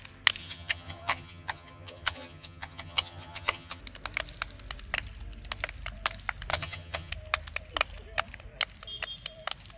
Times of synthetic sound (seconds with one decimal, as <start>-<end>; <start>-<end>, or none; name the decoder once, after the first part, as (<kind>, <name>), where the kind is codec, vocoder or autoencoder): 0.4-3.8 (vocoder, HiFi-GAN); 6.5-7.1